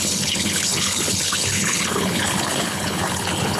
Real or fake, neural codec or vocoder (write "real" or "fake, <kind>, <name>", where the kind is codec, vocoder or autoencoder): fake, codec, HILCodec